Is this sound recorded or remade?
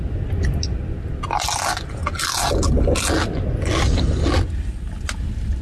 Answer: recorded